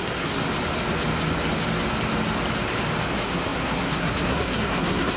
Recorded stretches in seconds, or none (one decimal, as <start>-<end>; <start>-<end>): 0.4-3.1